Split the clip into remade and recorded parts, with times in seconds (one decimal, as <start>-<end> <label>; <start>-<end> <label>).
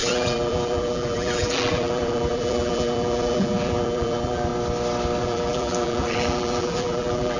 0.0-4.5 remade; 4.5-5.2 recorded; 5.2-7.4 remade